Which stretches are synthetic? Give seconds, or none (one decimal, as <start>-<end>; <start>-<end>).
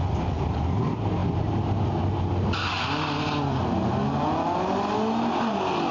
none